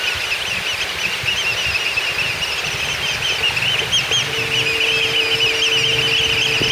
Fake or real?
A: real